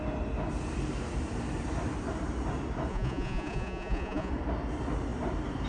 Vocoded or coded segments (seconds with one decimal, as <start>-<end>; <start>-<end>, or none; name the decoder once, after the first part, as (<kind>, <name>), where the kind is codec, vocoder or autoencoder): 2.9-4.3 (vocoder, Vocos)